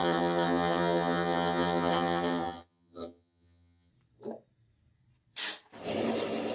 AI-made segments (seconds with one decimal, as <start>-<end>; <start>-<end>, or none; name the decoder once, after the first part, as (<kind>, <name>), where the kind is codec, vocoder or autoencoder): 0.0-3.9 (vocoder, HiFi-GAN)